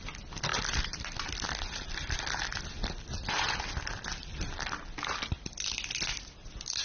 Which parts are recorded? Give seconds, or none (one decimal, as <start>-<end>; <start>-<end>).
0.0-6.8